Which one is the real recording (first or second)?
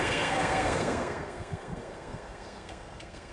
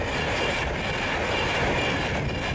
second